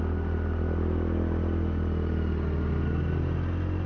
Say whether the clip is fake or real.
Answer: real